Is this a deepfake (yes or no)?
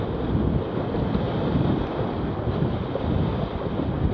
no